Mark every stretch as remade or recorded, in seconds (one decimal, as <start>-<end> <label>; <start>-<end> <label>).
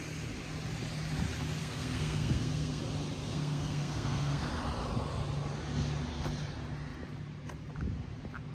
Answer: 0.0-1.6 recorded; 1.6-2.8 remade; 2.8-3.2 recorded; 3.2-4.5 remade; 4.5-8.5 recorded